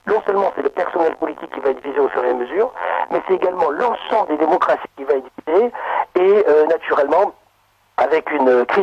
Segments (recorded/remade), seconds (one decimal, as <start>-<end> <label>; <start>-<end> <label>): 0.0-4.5 remade; 4.5-8.8 recorded

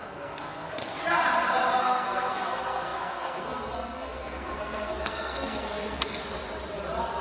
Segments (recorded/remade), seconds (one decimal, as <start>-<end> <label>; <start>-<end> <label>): 0.0-1.0 remade; 1.0-1.8 recorded; 1.8-6.2 remade; 6.2-7.2 recorded

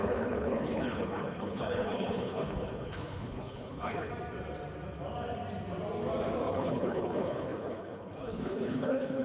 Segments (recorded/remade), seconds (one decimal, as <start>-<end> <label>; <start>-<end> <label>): 0.0-4.1 remade; 4.1-6.5 recorded; 6.5-9.2 remade